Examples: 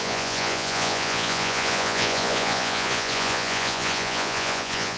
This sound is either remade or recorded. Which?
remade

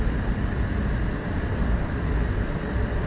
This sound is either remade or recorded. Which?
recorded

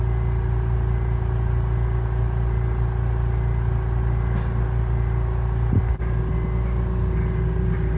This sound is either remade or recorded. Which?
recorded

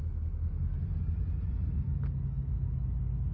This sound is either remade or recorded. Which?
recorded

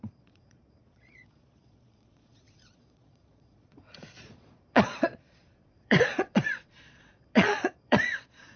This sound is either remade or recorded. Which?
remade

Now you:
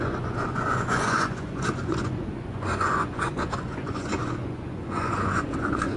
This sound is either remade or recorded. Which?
remade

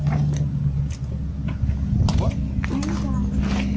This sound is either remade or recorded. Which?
recorded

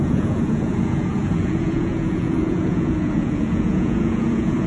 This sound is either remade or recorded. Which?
remade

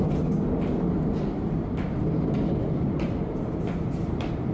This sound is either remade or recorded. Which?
recorded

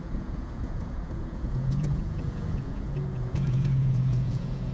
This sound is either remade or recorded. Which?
remade